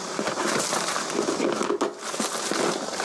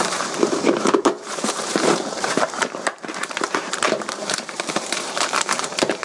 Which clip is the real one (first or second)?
first